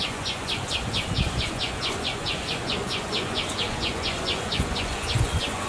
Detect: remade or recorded remade